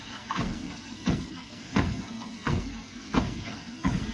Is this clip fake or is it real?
fake